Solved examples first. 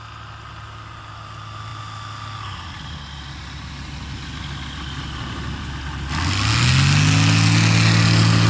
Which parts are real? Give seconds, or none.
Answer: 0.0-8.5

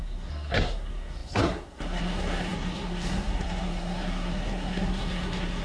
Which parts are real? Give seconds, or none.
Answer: none

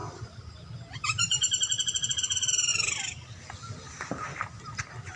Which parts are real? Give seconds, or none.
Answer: 0.0-0.9

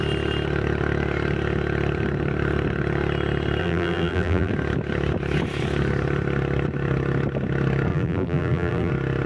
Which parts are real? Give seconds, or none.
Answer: 0.0-3.6; 4.5-7.9; 8.9-9.3